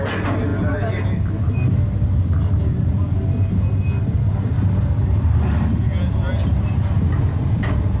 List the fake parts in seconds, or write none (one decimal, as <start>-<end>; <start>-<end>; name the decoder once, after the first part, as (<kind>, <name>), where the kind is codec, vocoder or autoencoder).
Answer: none